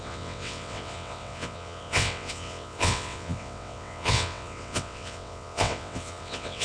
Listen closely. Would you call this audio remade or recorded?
remade